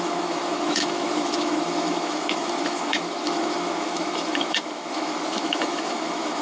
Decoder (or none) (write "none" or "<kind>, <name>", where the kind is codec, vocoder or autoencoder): autoencoder, DAC-VAE